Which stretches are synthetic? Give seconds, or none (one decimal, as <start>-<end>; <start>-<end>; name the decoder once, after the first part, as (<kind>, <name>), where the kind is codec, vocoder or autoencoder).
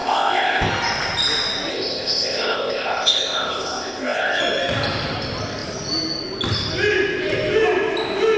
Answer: 0.0-0.7 (codec, ZipCodec); 1.7-4.4